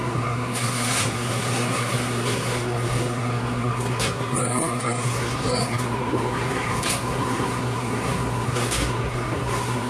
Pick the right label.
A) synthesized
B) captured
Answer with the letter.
A